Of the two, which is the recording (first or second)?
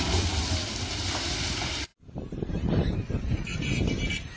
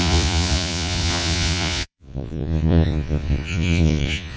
first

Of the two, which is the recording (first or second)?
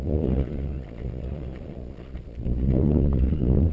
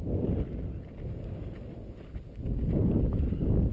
second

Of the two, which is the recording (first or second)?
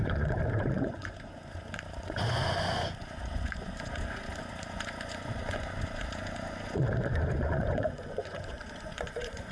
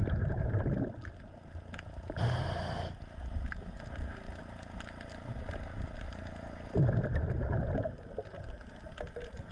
second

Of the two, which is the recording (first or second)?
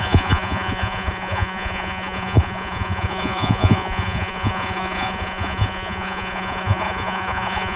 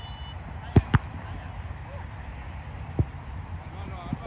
second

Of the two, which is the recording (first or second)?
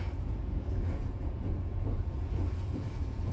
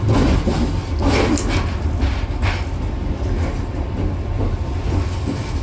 second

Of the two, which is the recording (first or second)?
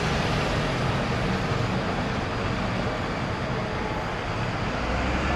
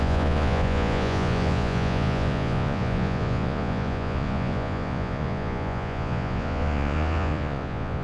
first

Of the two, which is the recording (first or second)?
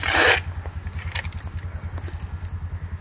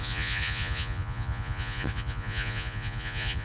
first